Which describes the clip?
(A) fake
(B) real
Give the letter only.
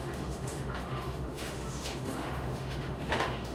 A